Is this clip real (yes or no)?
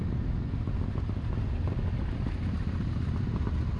yes